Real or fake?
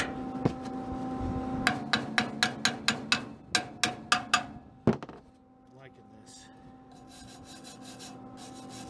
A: real